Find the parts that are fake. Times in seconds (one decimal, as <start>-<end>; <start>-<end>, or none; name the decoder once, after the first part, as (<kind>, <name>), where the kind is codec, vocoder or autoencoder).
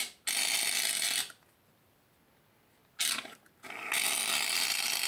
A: none